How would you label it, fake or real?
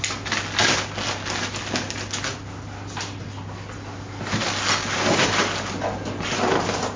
real